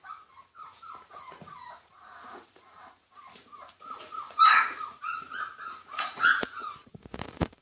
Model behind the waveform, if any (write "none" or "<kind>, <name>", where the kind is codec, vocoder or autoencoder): vocoder, Vocos